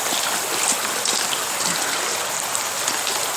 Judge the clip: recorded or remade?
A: recorded